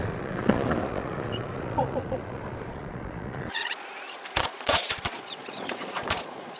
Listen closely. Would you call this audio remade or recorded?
remade